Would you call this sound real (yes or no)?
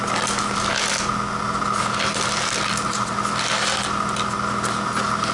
yes